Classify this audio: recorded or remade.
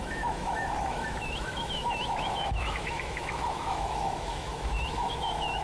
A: remade